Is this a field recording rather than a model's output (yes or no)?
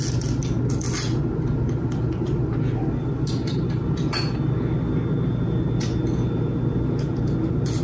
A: yes